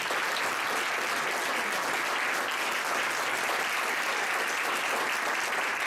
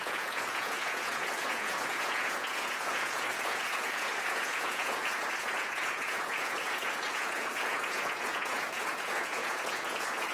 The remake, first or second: second